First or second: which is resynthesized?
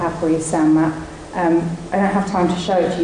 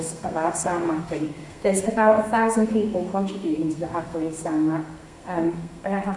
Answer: second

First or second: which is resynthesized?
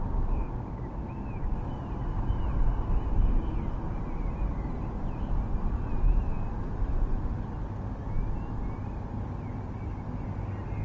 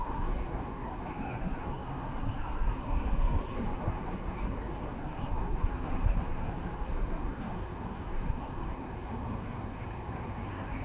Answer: second